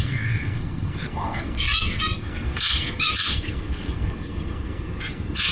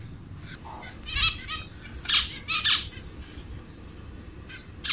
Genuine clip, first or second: second